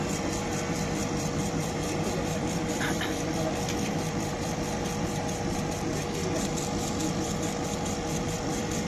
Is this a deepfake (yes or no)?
yes